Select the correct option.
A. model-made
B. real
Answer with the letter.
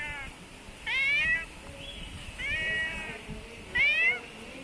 B